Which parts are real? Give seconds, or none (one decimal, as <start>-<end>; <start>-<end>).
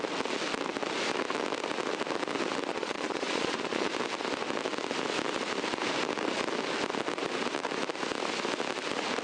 0.0-2.7; 3.9-9.2